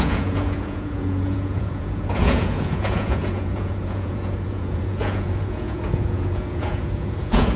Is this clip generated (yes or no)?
yes